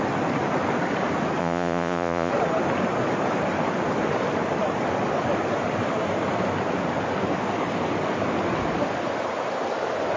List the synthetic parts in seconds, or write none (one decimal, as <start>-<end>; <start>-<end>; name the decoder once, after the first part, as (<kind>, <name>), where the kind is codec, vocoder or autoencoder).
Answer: 1.4-2.3 (vocoder, Vocos)